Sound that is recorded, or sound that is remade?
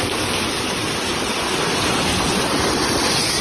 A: recorded